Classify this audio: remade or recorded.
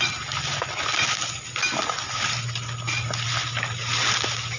recorded